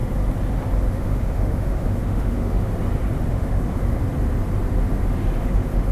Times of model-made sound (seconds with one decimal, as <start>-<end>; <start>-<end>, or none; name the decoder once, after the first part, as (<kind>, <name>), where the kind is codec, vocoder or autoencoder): 0.9-2.7 (autoencoder, DAC-VAE); 3.3-4.0; 5.4-5.9